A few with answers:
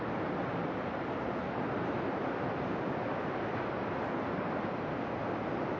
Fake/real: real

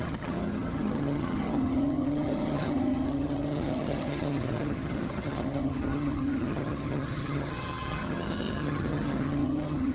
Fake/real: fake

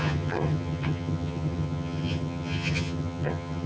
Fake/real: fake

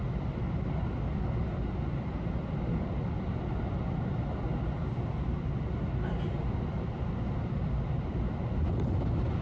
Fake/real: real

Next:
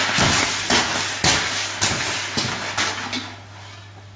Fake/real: real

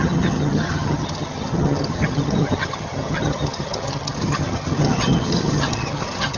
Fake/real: fake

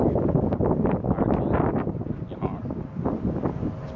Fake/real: real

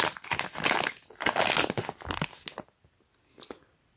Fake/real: real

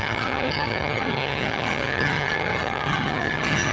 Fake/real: fake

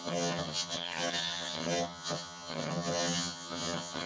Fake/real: fake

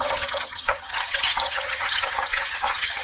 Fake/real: fake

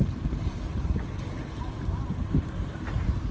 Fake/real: real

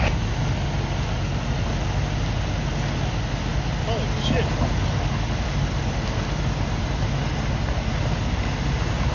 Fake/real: real